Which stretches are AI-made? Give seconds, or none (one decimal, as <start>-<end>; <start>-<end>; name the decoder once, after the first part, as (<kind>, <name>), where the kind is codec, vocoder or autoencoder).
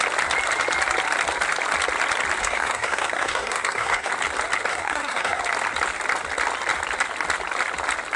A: 2.4-4.1 (codec, SNAC); 4.7-5.4